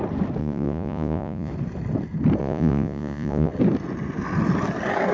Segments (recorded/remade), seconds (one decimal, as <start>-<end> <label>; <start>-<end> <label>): 0.0-0.4 recorded; 0.4-1.5 remade; 1.5-2.4 recorded; 2.4-3.5 remade; 3.5-5.1 recorded